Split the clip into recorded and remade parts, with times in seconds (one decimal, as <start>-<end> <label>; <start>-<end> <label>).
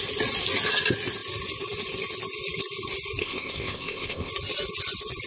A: 0.0-3.2 recorded; 3.2-4.3 remade; 4.3-5.3 recorded